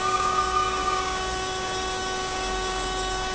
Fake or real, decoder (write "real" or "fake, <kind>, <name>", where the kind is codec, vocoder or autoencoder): fake, codec, DAC